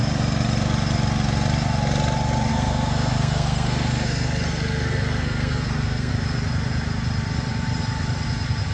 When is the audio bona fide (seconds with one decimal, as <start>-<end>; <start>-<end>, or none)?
0.0-2.5; 6.1-8.7